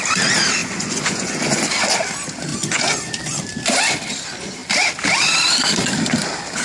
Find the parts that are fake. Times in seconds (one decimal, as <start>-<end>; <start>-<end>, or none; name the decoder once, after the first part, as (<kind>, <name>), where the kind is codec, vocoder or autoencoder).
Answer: 0.6-1.7 (vocoder, Vocos); 2.5-3.1